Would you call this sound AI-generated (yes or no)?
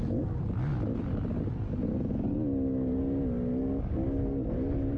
no